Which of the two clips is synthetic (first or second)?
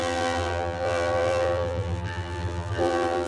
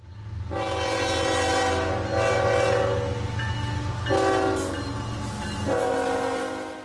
first